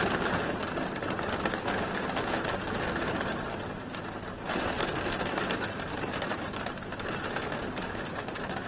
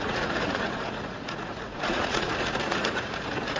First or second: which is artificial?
second